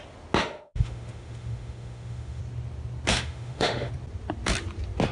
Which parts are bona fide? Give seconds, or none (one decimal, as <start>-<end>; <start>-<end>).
0.0-0.4; 2.4-3.1; 3.9-5.1